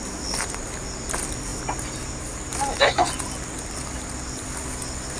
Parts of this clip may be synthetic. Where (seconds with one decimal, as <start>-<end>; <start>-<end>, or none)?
none